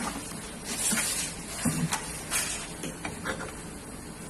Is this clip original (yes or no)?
yes